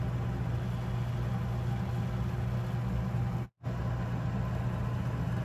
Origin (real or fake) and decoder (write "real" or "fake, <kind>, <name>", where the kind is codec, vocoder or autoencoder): real